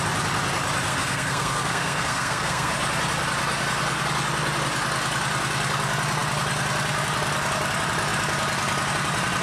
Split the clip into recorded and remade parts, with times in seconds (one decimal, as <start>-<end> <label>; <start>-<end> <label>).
0.0-0.9 recorded; 0.9-2.7 remade; 2.7-9.4 recorded